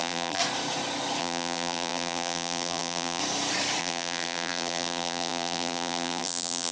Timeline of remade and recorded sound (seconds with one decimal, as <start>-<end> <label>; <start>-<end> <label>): 0.0-0.4 remade; 0.4-1.2 recorded; 1.2-3.2 remade; 3.2-3.8 recorded; 3.8-6.7 remade